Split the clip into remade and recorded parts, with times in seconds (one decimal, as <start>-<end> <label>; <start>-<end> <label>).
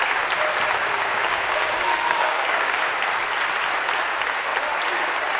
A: 0.0-0.8 recorded; 0.8-2.8 remade; 2.8-5.4 recorded